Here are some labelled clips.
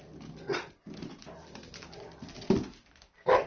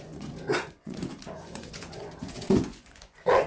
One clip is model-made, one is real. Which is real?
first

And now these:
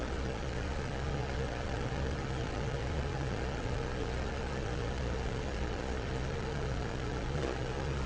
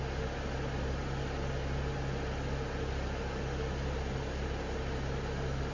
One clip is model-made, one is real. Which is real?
second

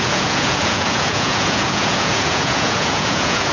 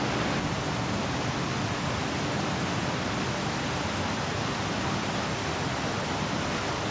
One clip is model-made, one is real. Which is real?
second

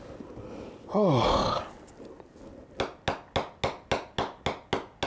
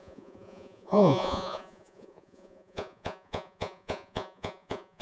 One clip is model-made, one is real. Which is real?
first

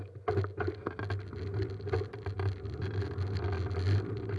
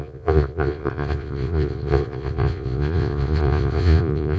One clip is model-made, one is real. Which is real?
first